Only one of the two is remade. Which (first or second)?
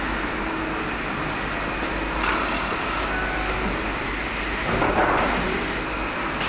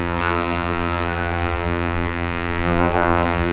second